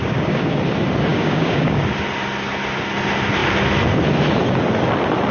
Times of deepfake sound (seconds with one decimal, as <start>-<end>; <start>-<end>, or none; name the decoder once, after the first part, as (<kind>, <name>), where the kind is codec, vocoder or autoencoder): 0.0-0.6 (codec, DAC); 1.1-1.8